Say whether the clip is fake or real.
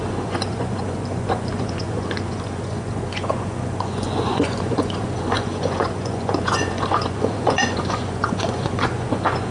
fake